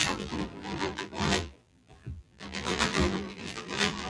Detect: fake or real fake